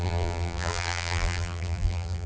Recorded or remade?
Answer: remade